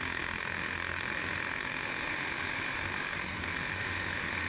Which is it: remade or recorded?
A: remade